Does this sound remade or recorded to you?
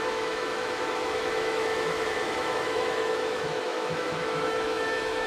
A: remade